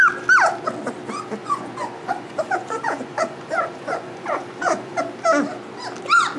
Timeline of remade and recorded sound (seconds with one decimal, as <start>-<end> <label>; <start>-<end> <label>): 0.0-1.4 recorded; 1.4-5.0 remade; 5.0-6.4 recorded